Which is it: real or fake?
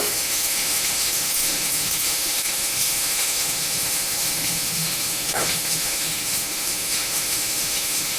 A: fake